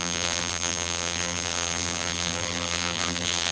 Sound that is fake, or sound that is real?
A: fake